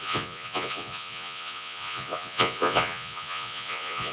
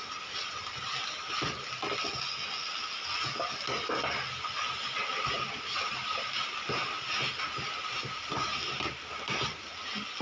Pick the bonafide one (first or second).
second